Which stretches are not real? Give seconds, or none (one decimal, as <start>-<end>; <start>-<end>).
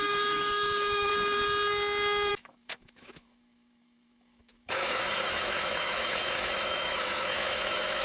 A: 0.0-1.1; 2.3-8.0